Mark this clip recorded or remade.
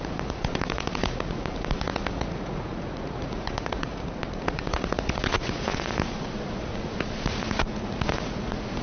remade